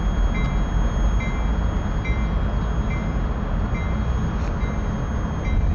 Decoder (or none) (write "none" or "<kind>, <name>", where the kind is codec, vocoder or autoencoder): none